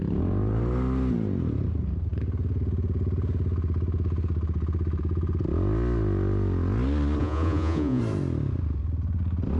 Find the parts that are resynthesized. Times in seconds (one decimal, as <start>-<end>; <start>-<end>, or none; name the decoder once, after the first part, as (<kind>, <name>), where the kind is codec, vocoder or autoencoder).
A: 7.2-8.0 (vocoder, Vocos)